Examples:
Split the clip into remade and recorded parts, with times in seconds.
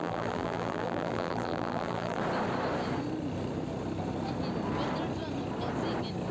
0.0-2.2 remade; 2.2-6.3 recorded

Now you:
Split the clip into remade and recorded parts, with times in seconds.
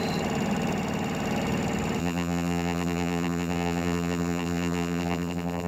0.0-2.0 recorded; 2.0-5.7 remade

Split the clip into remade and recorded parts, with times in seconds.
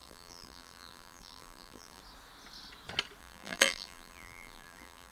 0.0-2.0 remade; 2.0-3.2 recorded; 3.2-5.1 remade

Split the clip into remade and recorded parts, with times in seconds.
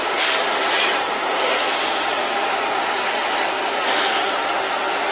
0.0-0.4 recorded; 0.4-3.3 remade; 3.3-5.1 recorded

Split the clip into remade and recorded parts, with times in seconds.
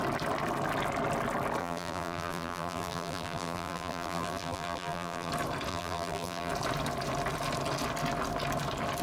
0.0-1.6 recorded; 1.6-5.3 remade; 5.3-5.7 recorded; 5.7-6.5 remade; 6.5-9.0 recorded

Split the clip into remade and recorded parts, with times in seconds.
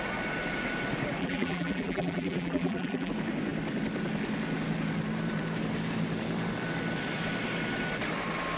0.0-1.2 recorded; 1.2-3.1 remade; 3.1-8.6 recorded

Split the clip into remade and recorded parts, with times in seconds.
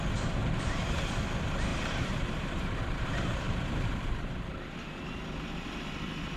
0.0-0.4 recorded; 0.4-1.0 remade; 1.0-1.7 recorded; 1.7-4.2 remade; 4.2-6.4 recorded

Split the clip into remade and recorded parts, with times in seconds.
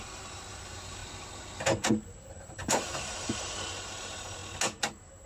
0.0-1.0 remade; 1.0-2.3 recorded; 2.3-4.4 remade; 4.4-5.3 recorded